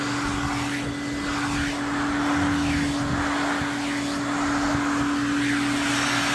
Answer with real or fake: real